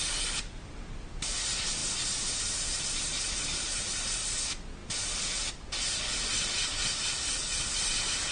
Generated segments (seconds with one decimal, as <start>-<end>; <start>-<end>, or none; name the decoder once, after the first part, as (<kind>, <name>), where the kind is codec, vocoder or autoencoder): none